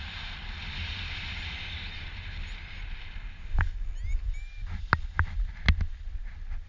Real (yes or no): yes